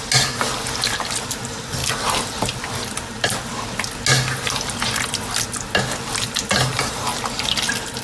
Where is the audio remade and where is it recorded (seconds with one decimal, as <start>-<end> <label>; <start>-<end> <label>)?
0.0-8.0 recorded